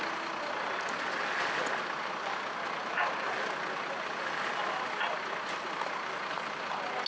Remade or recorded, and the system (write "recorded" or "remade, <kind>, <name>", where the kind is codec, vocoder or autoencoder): recorded